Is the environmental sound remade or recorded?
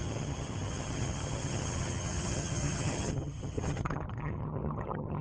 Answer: remade